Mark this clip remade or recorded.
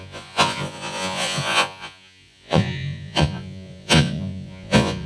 remade